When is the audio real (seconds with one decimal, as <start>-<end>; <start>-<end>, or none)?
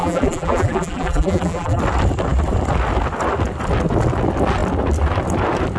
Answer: 1.8-5.8